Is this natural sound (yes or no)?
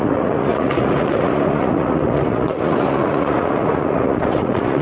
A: no